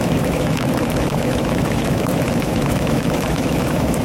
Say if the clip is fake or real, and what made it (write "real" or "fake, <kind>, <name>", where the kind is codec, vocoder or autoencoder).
fake, autoencoder, DAC-VAE